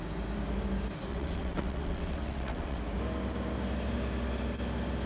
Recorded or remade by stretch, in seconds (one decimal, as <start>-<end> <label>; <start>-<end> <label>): 0.0-1.1 recorded; 1.1-2.8 remade; 2.8-5.1 recorded